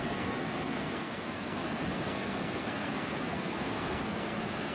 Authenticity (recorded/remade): remade